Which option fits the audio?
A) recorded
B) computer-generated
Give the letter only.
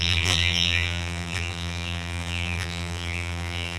B